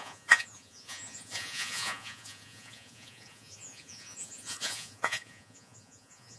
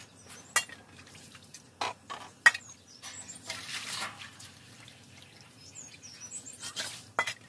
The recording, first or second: second